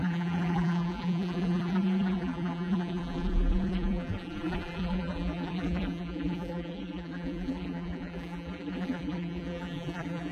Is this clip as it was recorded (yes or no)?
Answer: no